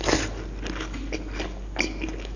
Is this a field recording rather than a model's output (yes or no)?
yes